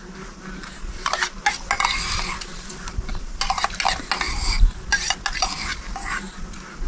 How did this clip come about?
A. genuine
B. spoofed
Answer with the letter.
A